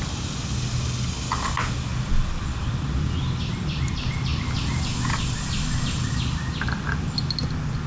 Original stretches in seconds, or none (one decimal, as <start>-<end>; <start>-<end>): 0.0-7.9